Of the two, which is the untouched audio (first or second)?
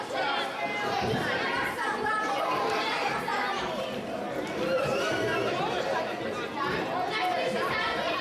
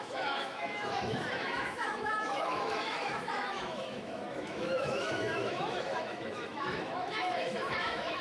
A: first